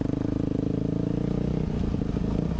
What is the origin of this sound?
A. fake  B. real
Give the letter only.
B